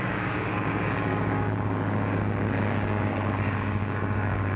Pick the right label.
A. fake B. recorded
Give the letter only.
A